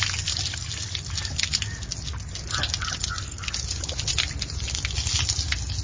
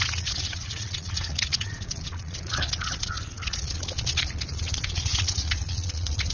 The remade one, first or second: second